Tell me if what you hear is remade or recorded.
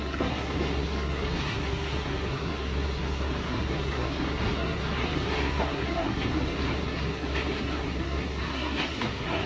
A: remade